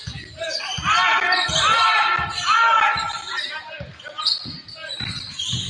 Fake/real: real